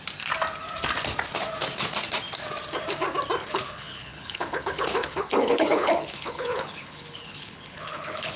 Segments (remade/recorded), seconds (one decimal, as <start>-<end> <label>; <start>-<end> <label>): 0.0-3.4 recorded; 3.4-8.4 remade